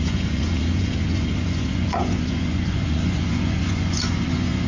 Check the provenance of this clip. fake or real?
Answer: fake